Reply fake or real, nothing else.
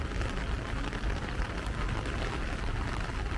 real